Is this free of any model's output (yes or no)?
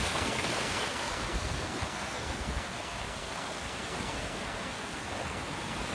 no